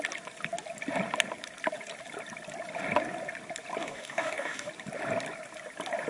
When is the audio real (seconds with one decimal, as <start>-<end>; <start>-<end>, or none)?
0.0-3.8; 4.7-6.1